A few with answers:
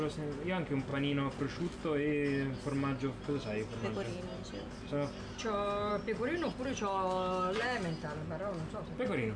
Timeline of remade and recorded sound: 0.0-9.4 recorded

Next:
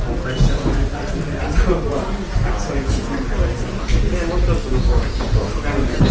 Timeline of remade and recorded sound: 0.0-4.7 recorded; 4.7-5.3 remade; 5.3-6.1 recorded

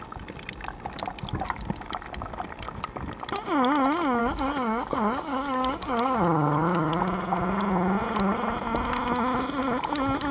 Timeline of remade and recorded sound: 0.0-4.2 recorded; 4.2-7.0 remade; 7.0-10.3 recorded